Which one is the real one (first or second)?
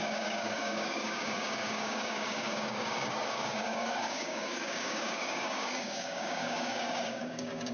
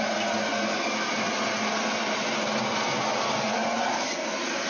second